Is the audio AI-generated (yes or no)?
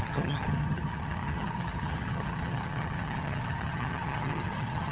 yes